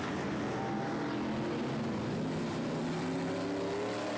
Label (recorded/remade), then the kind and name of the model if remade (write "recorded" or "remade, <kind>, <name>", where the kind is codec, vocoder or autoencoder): recorded